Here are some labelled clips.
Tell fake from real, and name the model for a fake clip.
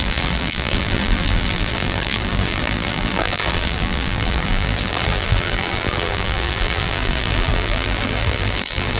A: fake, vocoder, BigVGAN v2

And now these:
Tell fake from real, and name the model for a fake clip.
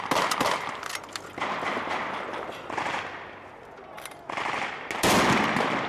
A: real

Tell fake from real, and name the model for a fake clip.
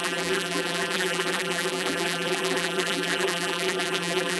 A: fake, vocoder, BigVGAN v2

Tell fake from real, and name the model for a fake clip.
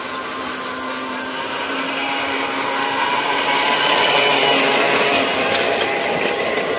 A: real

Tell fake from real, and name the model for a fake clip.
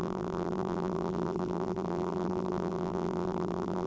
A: fake, vocoder, BigVGAN v2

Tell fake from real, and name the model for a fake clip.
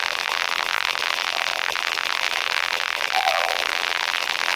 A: fake, vocoder, BigVGAN v2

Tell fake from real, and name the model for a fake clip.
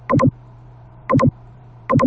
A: fake, vocoder, BigVGAN v2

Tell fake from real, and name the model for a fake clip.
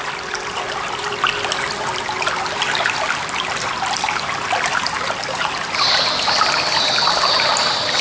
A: fake, vocoder, BigVGAN v2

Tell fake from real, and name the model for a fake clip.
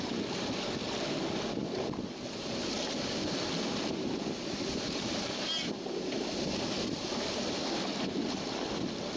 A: real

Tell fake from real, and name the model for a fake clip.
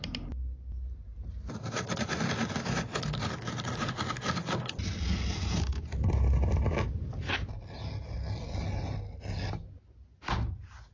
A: real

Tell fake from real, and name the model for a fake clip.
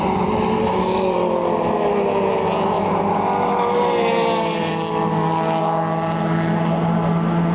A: real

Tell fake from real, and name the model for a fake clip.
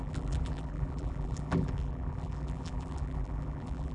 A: fake, vocoder, BigVGAN v2